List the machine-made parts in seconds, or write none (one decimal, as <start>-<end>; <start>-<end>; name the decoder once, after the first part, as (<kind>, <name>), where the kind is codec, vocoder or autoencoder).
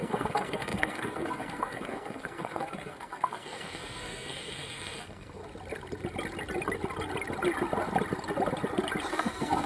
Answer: 0.0-5.4 (codec, SNAC); 9.1-9.7